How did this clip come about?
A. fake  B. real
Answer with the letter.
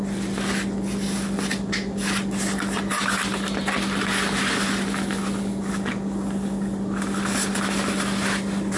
B